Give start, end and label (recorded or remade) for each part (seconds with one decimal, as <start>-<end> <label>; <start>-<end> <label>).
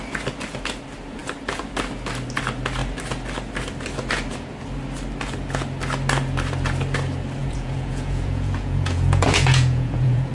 0.0-7.4 recorded; 7.4-10.3 remade